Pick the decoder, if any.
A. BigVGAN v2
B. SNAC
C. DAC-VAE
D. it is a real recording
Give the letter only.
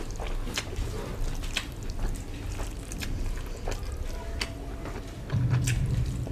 D